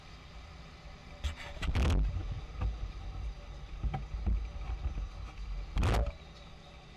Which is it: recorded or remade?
recorded